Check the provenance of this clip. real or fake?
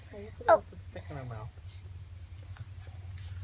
real